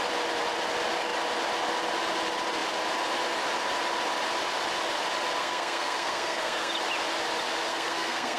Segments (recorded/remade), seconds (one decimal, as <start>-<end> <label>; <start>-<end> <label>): 0.0-5.4 recorded; 5.4-6.7 remade; 6.7-7.7 recorded; 7.7-8.4 remade